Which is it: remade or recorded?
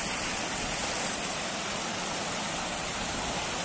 recorded